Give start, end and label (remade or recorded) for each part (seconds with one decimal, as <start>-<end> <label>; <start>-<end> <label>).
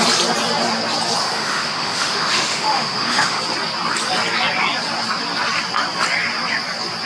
0.0-1.2 recorded; 1.2-3.4 remade; 3.4-7.1 recorded